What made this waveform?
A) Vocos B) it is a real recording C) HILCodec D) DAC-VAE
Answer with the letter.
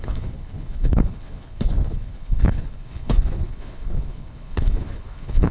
C